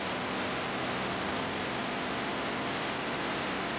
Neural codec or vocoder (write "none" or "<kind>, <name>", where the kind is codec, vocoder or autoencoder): none